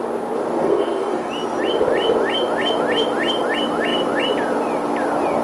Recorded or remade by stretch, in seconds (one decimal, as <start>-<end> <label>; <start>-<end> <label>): 0.0-0.6 recorded; 0.6-1.3 remade; 1.3-5.4 recorded